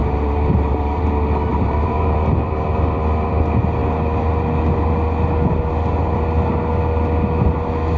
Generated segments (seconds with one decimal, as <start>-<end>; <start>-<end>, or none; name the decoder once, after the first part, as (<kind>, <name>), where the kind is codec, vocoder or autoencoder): 0.0-1.1 (vocoder, BigVGAN v2); 1.5-2.7